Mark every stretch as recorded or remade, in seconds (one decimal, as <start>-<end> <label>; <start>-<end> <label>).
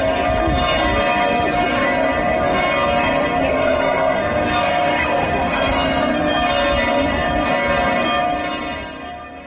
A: 0.0-3.5 recorded; 3.5-6.3 remade; 6.3-9.5 recorded